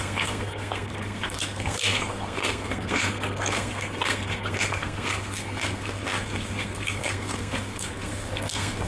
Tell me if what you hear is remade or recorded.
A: remade